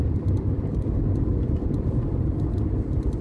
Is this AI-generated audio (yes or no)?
no